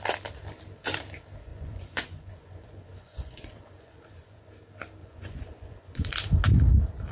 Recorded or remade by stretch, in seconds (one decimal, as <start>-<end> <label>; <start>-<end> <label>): 0.0-1.5 recorded; 1.5-4.5 remade; 4.5-5.0 recorded; 5.0-6.1 remade; 6.1-7.1 recorded